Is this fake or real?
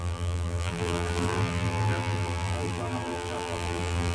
fake